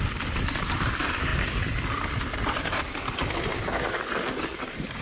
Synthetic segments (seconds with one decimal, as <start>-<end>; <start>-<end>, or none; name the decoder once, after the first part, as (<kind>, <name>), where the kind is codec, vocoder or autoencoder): 0.0-1.3 (vocoder, BigVGAN v2); 4.3-5.0